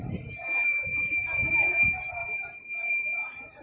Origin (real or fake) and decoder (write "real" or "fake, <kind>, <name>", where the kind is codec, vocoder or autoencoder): fake, vocoder, BigVGAN v2